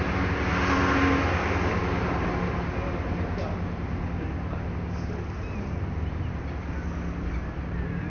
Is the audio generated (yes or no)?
no